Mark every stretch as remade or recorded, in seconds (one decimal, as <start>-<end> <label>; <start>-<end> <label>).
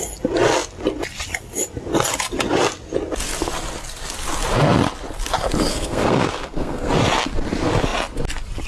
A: 0.0-5.7 recorded; 5.7-6.9 remade; 6.9-8.7 recorded